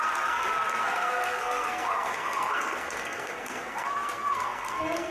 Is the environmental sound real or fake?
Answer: fake